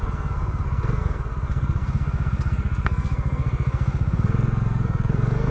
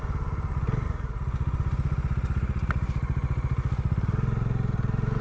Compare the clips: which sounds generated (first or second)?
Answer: first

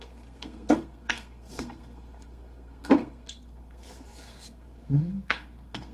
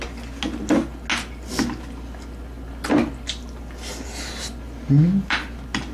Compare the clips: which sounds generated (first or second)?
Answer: first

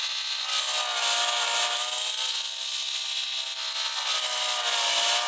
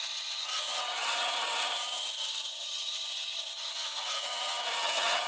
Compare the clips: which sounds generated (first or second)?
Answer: second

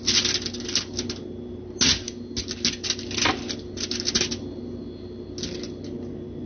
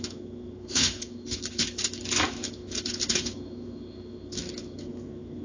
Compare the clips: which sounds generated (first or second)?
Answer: second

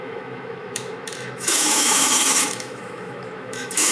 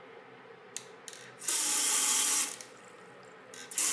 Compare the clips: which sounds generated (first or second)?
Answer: first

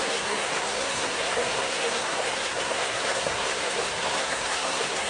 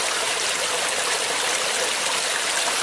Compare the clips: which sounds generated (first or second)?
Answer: first